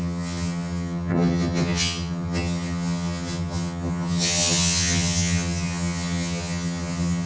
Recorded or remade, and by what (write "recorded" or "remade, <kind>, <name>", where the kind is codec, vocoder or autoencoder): remade, vocoder, HiFi-GAN